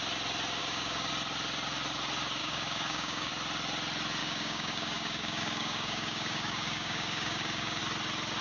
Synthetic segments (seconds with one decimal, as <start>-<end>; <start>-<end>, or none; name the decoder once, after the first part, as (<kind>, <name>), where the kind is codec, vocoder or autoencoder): 0.6-1.1 (codec, DAC); 2.4-3.3; 4.2-7.8

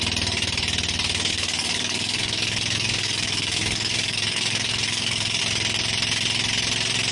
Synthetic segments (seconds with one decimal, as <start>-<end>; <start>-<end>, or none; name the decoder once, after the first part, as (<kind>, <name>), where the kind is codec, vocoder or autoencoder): 1.3-5.4 (codec, DAC)